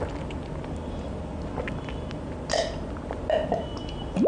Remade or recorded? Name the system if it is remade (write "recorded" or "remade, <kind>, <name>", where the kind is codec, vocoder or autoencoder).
recorded